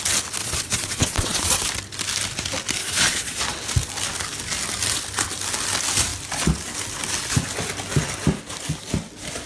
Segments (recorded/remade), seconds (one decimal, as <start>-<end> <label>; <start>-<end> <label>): 0.0-0.4 recorded; 0.4-1.5 remade; 1.5-2.8 recorded; 2.8-3.4 remade; 3.4-9.5 recorded